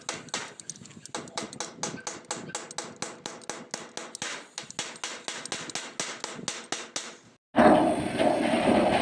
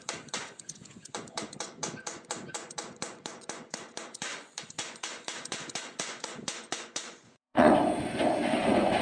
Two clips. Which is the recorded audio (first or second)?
first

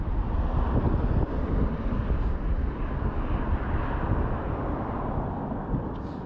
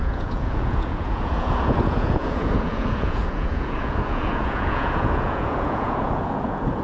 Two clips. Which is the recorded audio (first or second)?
first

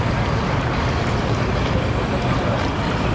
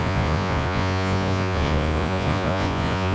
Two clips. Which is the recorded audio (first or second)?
first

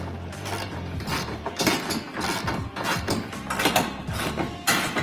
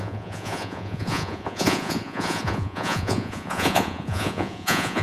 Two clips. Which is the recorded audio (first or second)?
first